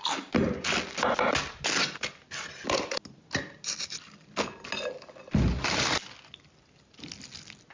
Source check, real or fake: real